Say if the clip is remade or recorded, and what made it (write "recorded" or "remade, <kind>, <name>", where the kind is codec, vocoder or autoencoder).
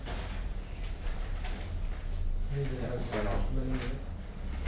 recorded